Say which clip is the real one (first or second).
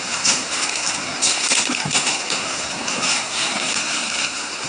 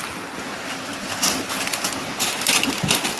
second